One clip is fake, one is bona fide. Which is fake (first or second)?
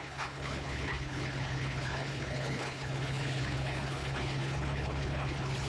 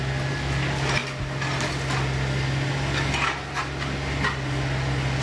first